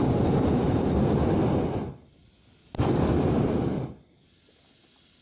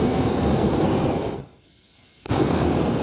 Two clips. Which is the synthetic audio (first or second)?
second